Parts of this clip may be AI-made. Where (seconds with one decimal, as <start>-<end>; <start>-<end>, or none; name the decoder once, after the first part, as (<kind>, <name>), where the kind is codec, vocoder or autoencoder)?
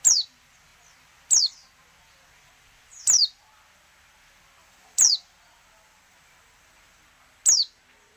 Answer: 4.6-7.0 (vocoder, BigVGAN v2)